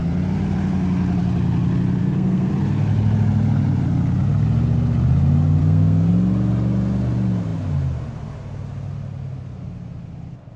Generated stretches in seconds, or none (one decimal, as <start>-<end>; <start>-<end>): 2.0-2.5; 5.6-6.1